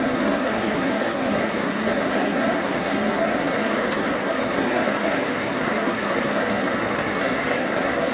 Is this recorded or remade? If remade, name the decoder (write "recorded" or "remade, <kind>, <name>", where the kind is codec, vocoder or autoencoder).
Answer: remade, codec, SNAC